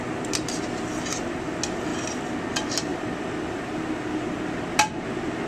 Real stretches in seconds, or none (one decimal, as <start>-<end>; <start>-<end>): 0.0-5.5